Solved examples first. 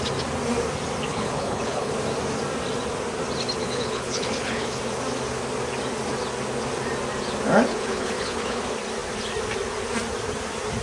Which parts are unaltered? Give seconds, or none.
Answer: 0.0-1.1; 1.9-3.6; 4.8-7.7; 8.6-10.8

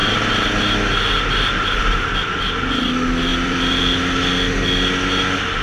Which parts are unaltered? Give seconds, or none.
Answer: 0.6-3.3; 3.8-5.6

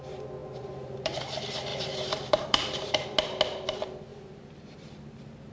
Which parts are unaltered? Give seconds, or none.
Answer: 0.0-0.4; 1.2-1.7; 2.9-4.1

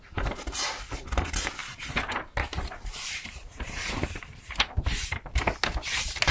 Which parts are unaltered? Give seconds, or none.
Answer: 0.0-1.6; 5.4-6.3

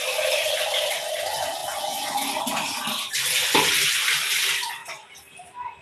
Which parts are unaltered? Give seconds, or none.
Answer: 1.6-3.9; 4.8-5.3

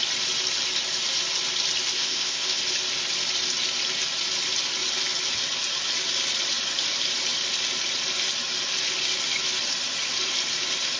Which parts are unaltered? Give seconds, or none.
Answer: 0.0-1.9; 2.6-11.0